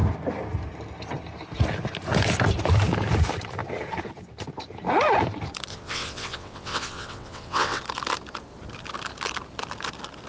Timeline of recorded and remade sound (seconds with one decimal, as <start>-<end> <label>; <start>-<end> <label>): 0.0-5.7 recorded; 5.7-7.8 remade; 7.8-10.3 recorded